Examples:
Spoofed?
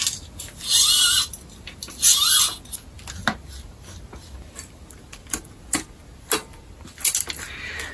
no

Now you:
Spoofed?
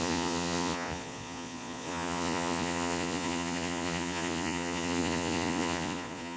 yes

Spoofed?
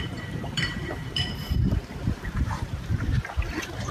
yes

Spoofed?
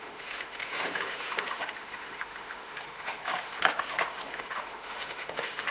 yes